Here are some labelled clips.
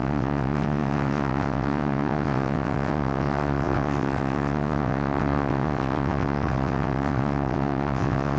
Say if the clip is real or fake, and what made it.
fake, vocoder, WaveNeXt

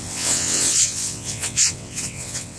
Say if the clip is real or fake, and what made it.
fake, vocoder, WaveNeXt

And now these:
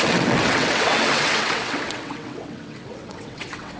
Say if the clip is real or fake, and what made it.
fake, vocoder, WaveNeXt